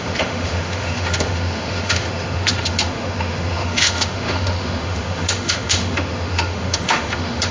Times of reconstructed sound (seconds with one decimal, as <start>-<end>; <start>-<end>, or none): 0.0-7.5